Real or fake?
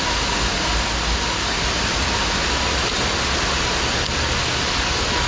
real